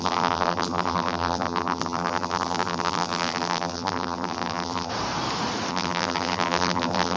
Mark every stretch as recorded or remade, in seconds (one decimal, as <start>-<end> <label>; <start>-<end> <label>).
0.0-4.9 remade; 4.9-5.7 recorded; 5.7-7.2 remade